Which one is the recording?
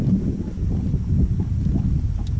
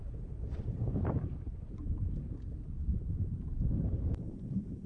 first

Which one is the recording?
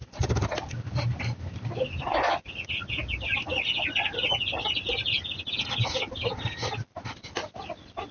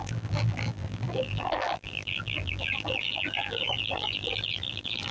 first